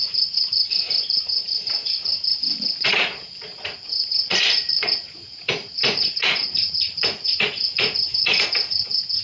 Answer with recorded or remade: remade